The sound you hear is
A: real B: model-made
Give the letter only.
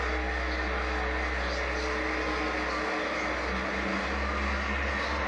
A